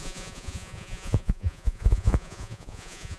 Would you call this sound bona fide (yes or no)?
no